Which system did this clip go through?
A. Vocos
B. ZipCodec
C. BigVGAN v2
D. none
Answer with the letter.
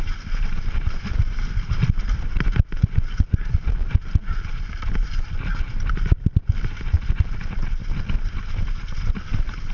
D